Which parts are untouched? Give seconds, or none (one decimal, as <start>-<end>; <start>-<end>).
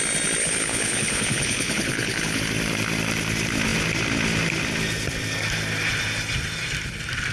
0.0-0.4; 2.4-7.3